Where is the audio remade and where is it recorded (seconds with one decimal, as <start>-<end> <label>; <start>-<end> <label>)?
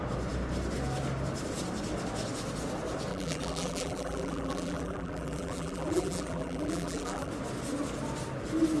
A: 0.0-3.1 recorded; 3.1-7.3 remade; 7.3-8.8 recorded